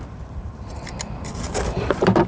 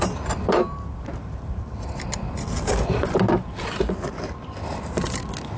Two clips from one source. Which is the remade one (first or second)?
first